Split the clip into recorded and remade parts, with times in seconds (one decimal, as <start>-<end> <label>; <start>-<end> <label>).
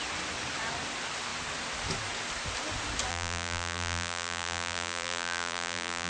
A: 0.0-3.1 recorded; 3.1-6.1 remade